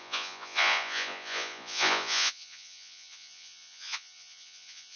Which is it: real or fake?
fake